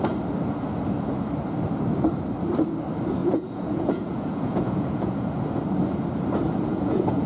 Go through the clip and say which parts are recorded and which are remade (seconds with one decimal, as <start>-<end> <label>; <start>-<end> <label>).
0.0-3.2 recorded; 3.2-5.3 remade; 5.3-6.7 recorded; 6.7-7.3 remade